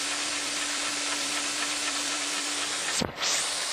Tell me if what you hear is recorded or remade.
remade